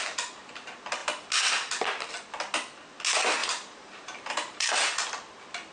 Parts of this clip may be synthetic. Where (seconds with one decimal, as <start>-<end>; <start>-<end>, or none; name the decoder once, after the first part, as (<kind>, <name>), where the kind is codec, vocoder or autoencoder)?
3.4-4.7 (vocoder, BigVGAN v2)